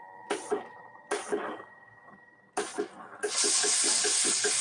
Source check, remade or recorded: recorded